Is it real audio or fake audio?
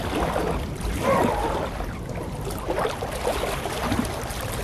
real